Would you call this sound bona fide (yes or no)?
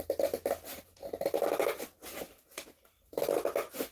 yes